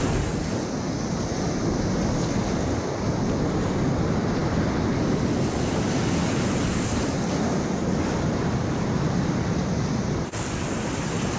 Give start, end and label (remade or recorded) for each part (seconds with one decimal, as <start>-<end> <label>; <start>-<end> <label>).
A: 0.0-11.4 recorded